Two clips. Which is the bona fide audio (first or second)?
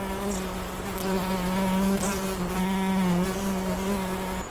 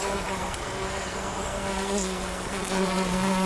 first